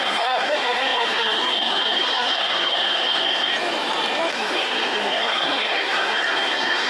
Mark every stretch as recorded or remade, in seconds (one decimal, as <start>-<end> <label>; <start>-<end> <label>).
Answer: 0.0-3.5 remade; 3.5-4.3 recorded; 4.3-6.9 remade